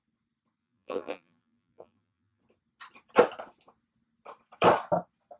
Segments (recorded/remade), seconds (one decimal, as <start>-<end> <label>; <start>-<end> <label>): 0.0-0.6 recorded; 0.6-2.4 remade; 2.4-5.4 recorded